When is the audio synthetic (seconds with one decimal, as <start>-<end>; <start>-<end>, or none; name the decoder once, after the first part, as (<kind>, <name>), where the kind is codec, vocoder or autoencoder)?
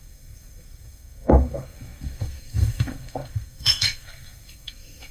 0.0-5.1 (codec, SNAC)